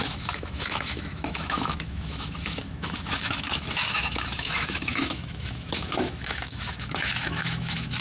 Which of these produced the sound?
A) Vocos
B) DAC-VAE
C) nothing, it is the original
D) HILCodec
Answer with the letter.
B